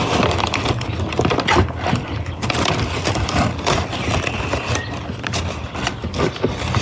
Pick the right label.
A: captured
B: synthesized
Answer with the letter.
A